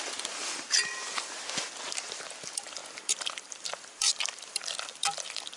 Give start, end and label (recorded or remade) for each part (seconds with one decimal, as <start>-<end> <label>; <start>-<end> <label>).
0.0-5.6 remade